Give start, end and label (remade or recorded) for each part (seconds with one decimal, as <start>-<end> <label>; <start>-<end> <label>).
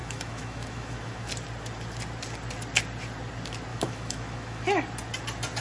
0.0-1.3 remade; 1.3-3.7 recorded; 3.7-4.6 remade; 4.6-5.6 recorded